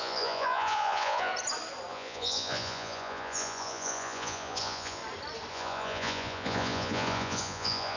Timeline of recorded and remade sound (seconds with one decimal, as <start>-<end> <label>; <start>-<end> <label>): 0.0-1.3 remade; 1.3-1.9 recorded; 1.9-5.0 remade; 5.0-5.5 recorded; 5.5-8.0 remade